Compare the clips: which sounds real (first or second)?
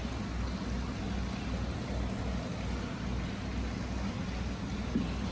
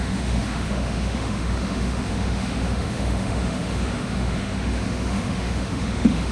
first